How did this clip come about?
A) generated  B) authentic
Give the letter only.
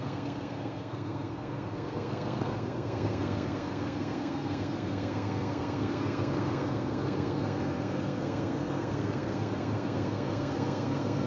A